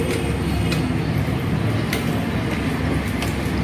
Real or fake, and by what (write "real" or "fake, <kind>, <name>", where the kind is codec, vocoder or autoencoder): real